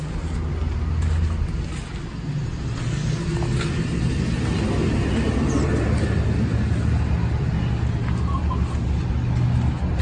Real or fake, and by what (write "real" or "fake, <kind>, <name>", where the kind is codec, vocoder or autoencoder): real